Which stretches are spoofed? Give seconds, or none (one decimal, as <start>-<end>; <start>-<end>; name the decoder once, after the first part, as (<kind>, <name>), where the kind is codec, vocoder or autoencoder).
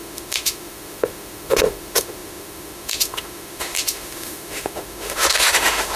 0.0-6.0 (autoencoder, DAC-VAE)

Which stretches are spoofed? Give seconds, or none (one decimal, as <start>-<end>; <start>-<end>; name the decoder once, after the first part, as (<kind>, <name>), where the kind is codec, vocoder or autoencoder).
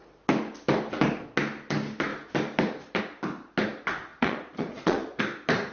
4.1-5.2 (vocoder, Vocos)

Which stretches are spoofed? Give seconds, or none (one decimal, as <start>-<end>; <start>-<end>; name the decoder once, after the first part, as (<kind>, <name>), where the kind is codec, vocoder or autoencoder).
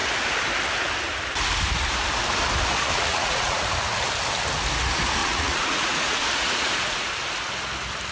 2.9-3.7 (vocoder, Vocos); 5.2-7.1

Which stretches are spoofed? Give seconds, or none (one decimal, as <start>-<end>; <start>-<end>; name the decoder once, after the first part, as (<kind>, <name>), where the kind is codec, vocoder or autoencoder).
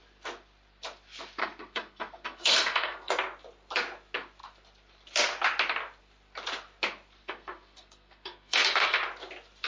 1.4-3.1 (codec, SNAC); 7.2-9.0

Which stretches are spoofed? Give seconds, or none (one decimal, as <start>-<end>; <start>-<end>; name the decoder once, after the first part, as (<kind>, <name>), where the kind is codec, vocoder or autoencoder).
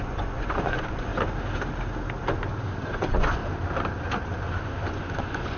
0.0-1.1 (vocoder, Vocos); 2.8-3.4; 4.9-5.6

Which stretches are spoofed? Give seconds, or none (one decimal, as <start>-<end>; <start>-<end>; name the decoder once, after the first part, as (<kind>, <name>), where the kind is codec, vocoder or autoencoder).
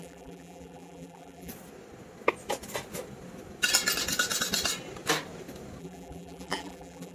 0.0-1.5 (vocoder, BigVGAN v2); 5.8-7.1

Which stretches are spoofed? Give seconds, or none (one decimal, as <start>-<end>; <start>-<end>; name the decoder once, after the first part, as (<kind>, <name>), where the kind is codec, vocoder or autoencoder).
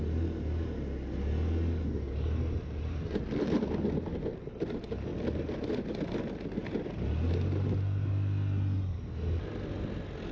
none